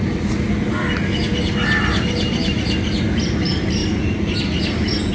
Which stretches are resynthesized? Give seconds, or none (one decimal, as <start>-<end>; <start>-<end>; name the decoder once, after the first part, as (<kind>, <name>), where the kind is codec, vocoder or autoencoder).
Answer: none